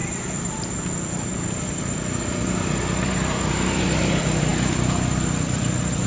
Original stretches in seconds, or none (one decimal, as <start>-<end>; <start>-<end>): none